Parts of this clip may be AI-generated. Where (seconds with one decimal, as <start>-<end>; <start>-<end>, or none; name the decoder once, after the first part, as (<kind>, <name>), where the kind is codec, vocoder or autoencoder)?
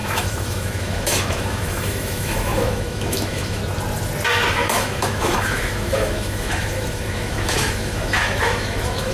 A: 0.0-3.6 (autoencoder, DAC-VAE); 4.5-9.1